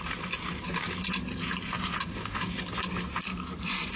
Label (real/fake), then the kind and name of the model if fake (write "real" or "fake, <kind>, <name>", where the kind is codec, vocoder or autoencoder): real